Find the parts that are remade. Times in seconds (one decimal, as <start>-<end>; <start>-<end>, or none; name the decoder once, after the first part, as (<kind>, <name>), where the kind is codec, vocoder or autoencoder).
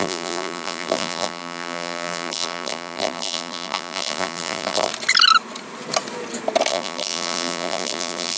0.0-4.9 (vocoder, BigVGAN v2); 6.7-8.4